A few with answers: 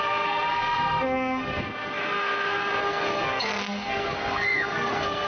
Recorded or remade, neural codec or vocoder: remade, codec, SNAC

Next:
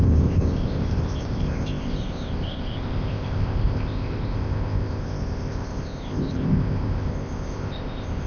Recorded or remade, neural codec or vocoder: remade, codec, ZipCodec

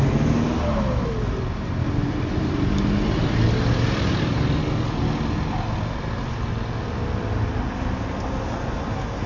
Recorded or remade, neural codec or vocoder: recorded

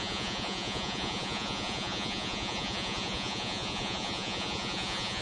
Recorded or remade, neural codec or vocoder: remade, vocoder, Vocos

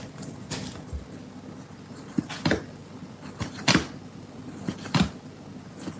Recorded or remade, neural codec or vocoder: recorded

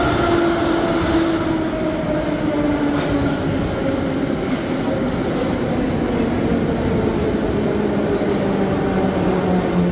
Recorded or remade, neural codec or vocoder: recorded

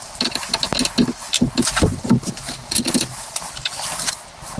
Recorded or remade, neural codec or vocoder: recorded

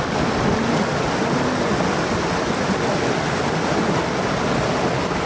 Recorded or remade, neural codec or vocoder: recorded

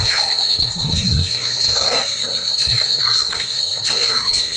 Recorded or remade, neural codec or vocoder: remade, codec, SNAC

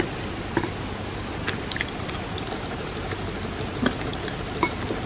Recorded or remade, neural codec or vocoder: recorded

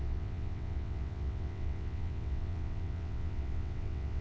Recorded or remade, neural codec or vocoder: remade, vocoder, WaveNeXt